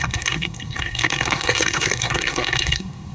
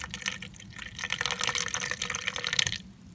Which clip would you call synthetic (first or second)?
first